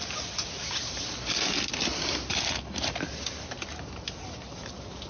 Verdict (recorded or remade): recorded